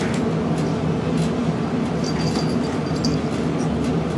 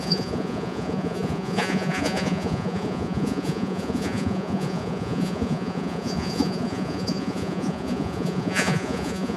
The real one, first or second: first